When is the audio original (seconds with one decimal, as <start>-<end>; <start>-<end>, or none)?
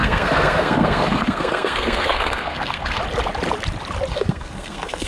3.0-4.1